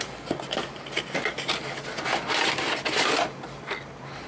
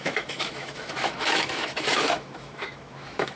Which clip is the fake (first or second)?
second